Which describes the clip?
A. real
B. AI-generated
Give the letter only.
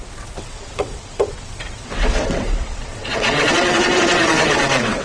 B